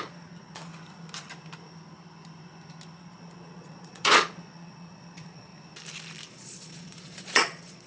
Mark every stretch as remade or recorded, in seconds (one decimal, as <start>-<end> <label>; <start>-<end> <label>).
0.0-0.7 remade; 0.7-3.0 recorded; 3.0-5.5 remade; 5.5-6.3 recorded; 6.3-7.9 remade